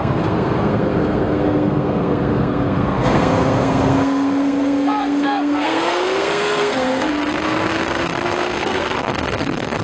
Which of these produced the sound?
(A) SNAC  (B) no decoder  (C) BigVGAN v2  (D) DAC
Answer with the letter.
A